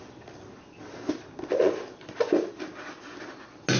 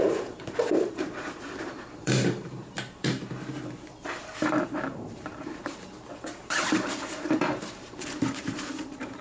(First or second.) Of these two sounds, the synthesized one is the second